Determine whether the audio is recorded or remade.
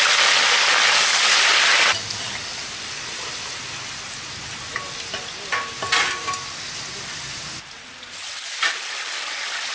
recorded